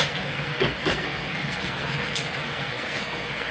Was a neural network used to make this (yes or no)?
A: yes